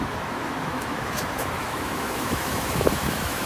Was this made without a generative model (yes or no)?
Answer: no